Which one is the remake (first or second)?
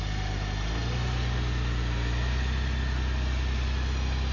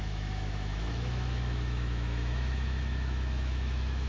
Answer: second